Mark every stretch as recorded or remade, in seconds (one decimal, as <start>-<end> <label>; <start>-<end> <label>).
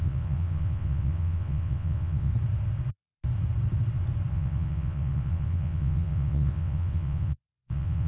0.0-2.3 remade; 2.3-4.3 recorded; 4.3-8.1 remade